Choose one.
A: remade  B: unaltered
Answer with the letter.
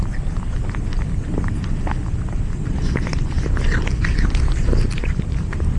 B